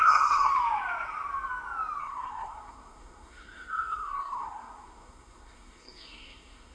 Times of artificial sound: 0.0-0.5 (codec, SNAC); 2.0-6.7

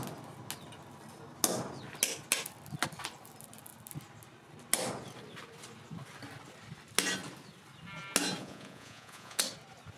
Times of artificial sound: 8.4-9.4 (vocoder, Vocos)

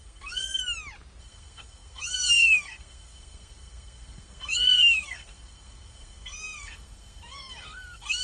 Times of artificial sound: 0.0-0.6 (codec, SNAC); 1.2-8.2

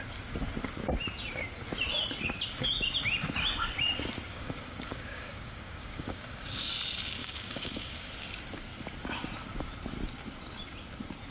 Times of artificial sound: 4.3-6.7 (codec, DAC); 7.2-8.1